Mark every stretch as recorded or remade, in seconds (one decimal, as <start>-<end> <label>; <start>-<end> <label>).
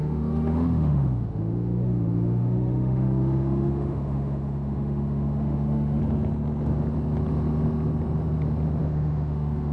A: 0.0-6.0 remade; 6.0-8.8 recorded; 8.8-9.7 remade